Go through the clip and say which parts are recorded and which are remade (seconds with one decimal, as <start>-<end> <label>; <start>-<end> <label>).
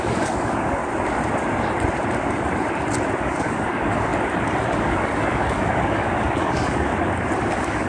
0.0-0.8 remade; 0.8-3.2 recorded; 3.2-4.1 remade; 4.1-4.8 recorded; 4.8-6.9 remade; 6.9-7.5 recorded; 7.5-7.9 remade